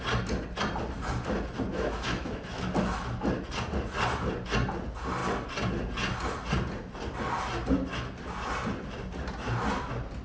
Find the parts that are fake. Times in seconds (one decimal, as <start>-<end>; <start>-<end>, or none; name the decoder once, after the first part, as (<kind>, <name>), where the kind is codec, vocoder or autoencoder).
1.7-2.7 (autoencoder, DAC-VAE)